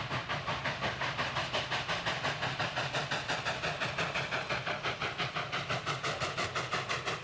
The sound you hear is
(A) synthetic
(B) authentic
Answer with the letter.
B